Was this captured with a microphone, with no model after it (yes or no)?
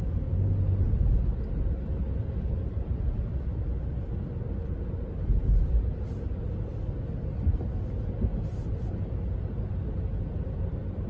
yes